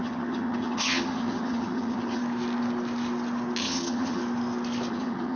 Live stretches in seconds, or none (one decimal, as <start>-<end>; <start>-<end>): 2.2-3.6; 4.2-4.9